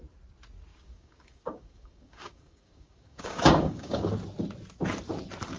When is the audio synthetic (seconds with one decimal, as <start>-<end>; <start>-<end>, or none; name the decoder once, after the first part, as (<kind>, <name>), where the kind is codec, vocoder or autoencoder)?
0.7-4.1 (codec, DAC)